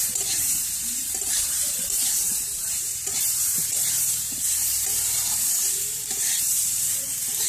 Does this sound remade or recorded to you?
remade